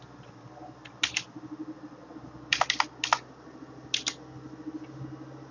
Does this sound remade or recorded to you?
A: recorded